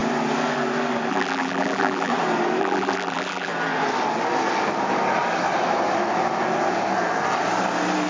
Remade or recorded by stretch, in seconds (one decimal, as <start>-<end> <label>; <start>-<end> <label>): 0.0-1.1 recorded; 1.1-2.1 remade; 2.1-2.6 recorded; 2.6-3.5 remade; 3.5-8.1 recorded